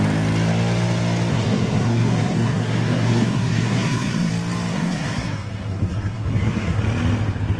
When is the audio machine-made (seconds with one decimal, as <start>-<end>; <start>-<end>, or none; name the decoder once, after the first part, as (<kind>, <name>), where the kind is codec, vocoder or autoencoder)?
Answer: 1.3-4.3 (codec, SNAC); 4.7-6.8

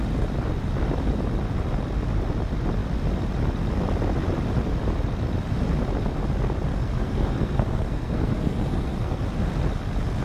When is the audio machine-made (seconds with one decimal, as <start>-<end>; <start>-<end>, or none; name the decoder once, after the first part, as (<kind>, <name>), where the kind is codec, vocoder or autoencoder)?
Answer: 6.7-9.2 (codec, SNAC)